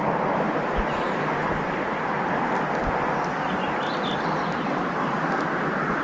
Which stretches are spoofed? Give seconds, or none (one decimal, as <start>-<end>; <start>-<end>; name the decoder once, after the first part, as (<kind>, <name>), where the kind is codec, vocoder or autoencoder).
none